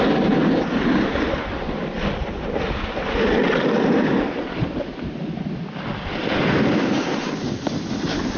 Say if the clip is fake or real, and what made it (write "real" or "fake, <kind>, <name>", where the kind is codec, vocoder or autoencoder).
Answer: real